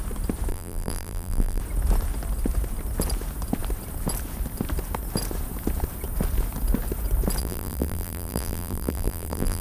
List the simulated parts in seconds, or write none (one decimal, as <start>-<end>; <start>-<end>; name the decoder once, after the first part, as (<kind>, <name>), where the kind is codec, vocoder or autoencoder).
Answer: 0.5-1.6 (vocoder, BigVGAN v2); 7.4-9.6